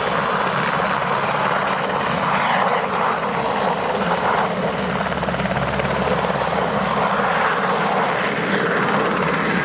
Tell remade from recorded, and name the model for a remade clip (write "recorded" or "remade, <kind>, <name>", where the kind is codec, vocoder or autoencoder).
recorded